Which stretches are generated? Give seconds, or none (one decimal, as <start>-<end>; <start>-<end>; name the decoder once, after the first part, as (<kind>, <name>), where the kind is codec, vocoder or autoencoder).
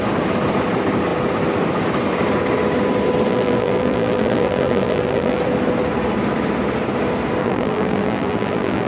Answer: 3.3-5.4 (vocoder, BigVGAN v2); 7.4-8.9